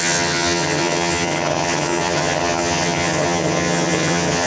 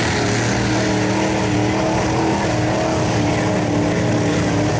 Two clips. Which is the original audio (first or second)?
second